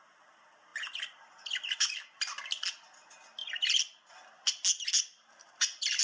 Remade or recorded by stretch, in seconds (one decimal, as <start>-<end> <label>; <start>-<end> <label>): 0.0-6.0 recorded

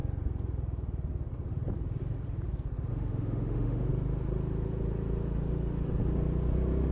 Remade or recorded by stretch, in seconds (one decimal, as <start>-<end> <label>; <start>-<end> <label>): 0.0-2.9 recorded; 2.9-3.9 remade; 3.9-6.9 recorded